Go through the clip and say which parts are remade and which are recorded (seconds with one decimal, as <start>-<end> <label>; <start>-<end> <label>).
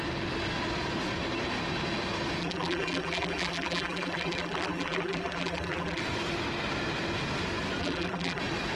0.0-2.4 recorded; 2.4-6.0 remade; 6.0-7.8 recorded; 7.8-8.4 remade; 8.4-8.8 recorded